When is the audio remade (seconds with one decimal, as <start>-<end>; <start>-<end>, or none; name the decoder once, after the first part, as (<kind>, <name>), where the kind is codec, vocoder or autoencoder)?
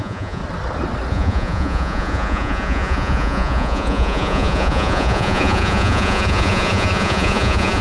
0.0-0.4 (vocoder, Vocos); 1.1-7.8